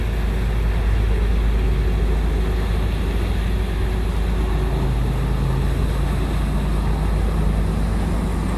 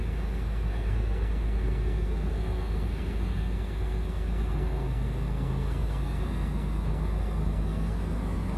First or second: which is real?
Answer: first